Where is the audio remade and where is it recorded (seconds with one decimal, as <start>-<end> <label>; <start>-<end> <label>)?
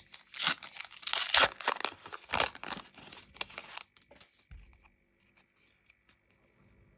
0.0-7.0 recorded